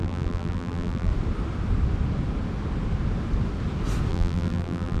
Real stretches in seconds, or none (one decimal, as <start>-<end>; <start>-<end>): 1.1-4.1